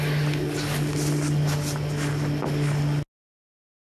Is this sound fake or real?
real